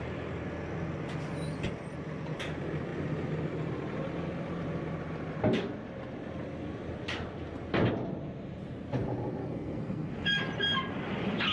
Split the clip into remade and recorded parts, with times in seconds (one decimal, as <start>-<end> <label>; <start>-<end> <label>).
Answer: 0.0-9.4 recorded; 9.4-10.1 remade; 10.1-11.5 recorded